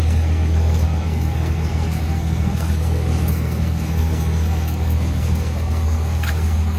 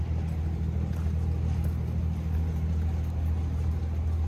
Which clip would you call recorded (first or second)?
second